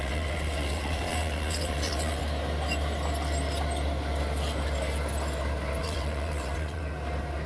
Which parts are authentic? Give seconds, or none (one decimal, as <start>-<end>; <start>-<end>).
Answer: 2.2-5.8; 6.8-7.5